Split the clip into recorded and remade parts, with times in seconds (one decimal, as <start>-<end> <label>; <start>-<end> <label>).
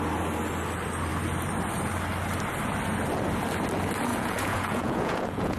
0.0-4.1 recorded; 4.1-5.6 remade